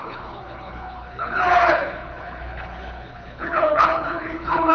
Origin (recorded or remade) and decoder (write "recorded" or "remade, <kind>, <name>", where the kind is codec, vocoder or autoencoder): remade, codec, HILCodec